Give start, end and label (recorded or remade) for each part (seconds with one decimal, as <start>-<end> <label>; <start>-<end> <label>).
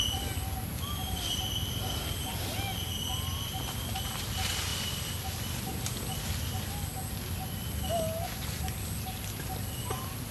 0.0-10.3 recorded